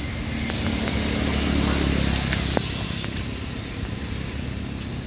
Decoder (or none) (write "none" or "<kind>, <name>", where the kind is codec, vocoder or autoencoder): none